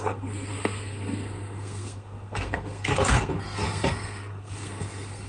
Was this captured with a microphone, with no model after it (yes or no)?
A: no